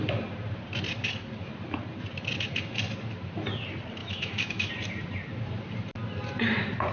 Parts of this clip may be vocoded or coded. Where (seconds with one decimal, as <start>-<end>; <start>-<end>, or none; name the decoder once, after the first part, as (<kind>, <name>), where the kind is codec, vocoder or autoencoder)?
4.0-4.7 (autoencoder, DAC-VAE)